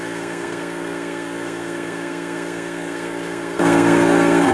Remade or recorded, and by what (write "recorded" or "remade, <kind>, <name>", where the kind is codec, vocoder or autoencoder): remade, codec, SNAC